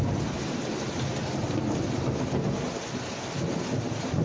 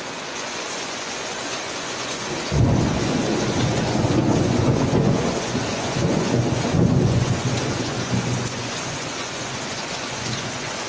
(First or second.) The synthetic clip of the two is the second